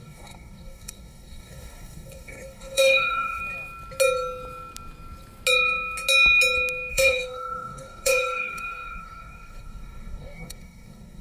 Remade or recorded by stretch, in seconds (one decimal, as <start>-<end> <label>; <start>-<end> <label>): 0.0-3.4 remade; 3.4-6.9 recorded; 6.9-11.2 remade